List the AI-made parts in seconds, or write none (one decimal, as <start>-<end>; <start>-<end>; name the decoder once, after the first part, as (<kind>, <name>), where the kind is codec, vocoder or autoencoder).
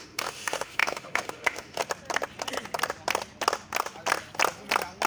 0.0-1.8 (autoencoder, DAC-VAE)